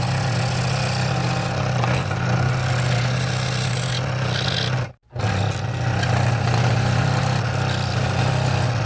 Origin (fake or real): real